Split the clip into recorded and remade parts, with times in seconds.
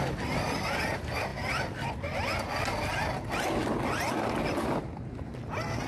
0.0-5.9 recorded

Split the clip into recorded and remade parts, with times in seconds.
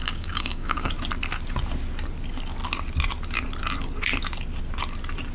0.0-0.9 remade; 0.9-5.3 recorded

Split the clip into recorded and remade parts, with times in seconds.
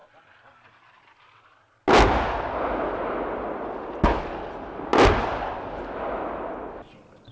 0.0-7.3 recorded